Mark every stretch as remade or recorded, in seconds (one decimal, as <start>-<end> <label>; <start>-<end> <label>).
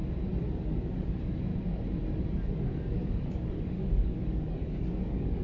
0.0-0.6 recorded; 0.6-1.5 remade; 1.5-2.4 recorded; 2.4-5.4 remade